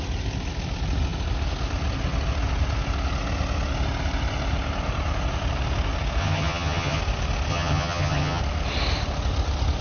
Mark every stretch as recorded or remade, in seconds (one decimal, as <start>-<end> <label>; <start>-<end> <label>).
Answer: 0.0-6.2 recorded; 6.2-7.0 remade; 7.0-7.5 recorded; 7.5-8.4 remade; 8.4-9.8 recorded